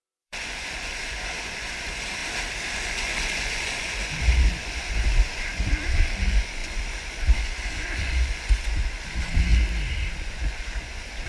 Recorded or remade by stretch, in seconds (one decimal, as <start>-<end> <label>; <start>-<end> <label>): 0.0-2.2 remade; 2.2-2.7 recorded; 2.7-9.5 remade; 9.5-10.1 recorded; 10.1-11.3 remade